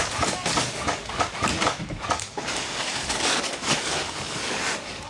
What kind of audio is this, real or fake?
fake